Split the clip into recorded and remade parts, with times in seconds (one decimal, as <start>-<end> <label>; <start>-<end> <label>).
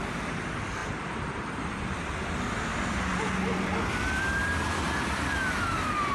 0.0-2.7 recorded; 2.7-6.1 remade